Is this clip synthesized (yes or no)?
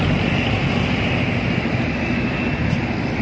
no